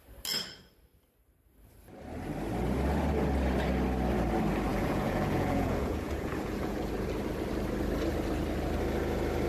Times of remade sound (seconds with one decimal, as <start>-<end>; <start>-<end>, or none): 4.7-6.9